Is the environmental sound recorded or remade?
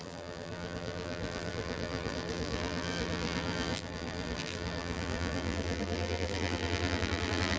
remade